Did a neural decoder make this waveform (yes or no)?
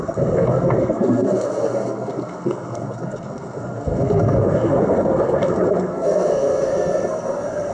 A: yes